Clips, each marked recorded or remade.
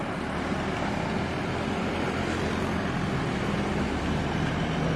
recorded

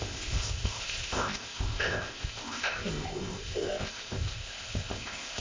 remade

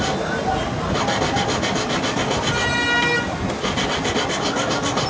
recorded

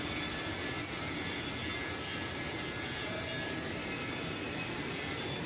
recorded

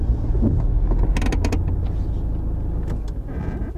recorded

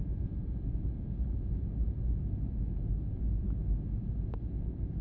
recorded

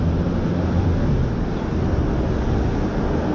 recorded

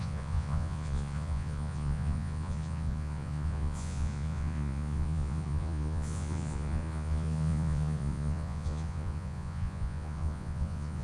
remade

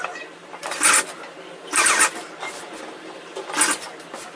recorded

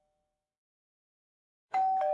remade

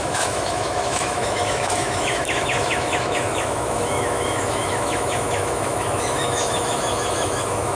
remade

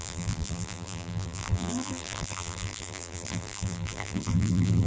remade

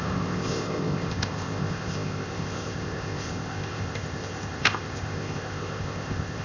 remade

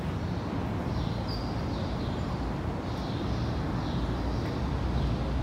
recorded